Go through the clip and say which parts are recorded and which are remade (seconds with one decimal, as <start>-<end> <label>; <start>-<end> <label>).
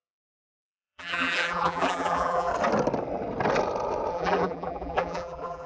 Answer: 0.0-2.5 remade; 2.5-4.1 recorded; 4.1-5.7 remade